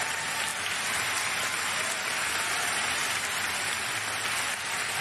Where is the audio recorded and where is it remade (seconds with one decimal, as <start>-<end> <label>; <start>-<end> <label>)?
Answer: 0.0-3.0 recorded; 3.0-3.8 remade; 3.8-5.0 recorded